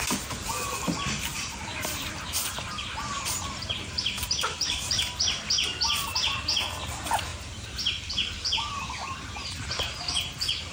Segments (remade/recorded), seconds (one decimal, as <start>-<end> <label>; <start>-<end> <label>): 0.0-1.3 recorded; 1.3-5.0 remade; 5.0-10.7 recorded